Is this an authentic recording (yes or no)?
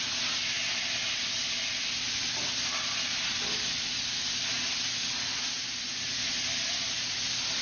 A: yes